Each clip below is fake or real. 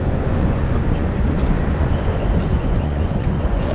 fake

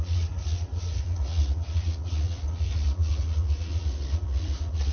fake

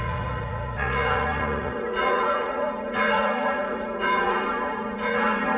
fake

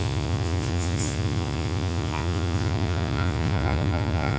fake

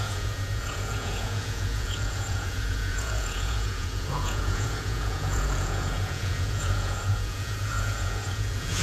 fake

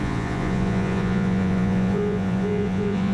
fake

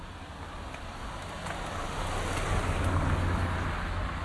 real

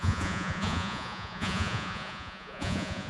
fake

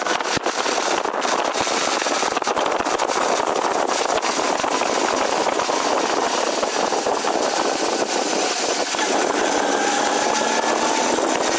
real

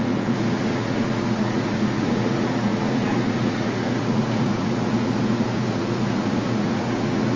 fake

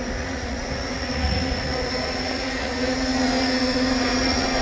fake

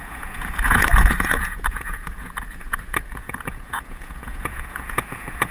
fake